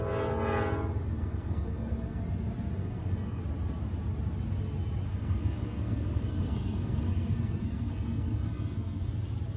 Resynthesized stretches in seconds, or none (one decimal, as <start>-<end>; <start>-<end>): 1.2-2.2; 2.8-3.4; 5.1-9.1